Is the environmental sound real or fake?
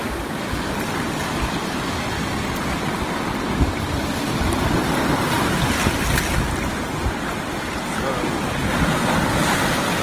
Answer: real